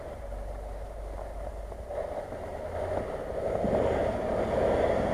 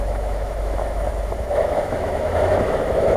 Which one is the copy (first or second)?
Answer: second